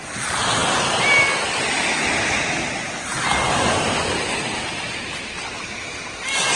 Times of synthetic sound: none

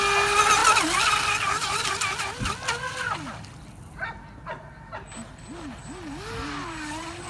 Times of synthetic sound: none

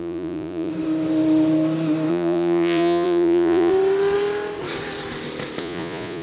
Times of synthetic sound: 0.0-0.7 (vocoder, Vocos); 2.1-3.7; 5.6-6.2

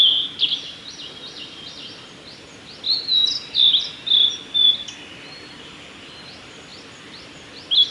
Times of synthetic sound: none

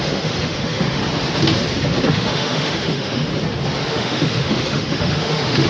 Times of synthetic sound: 0.0-1.0 (autoencoder, DAC-VAE); 2.1-3.3; 3.9-5.7

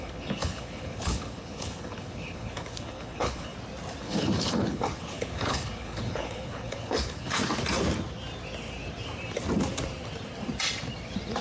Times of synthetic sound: 0.0-3.5 (codec, HILCodec); 4.0-7.4